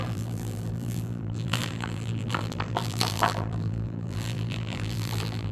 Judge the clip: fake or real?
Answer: fake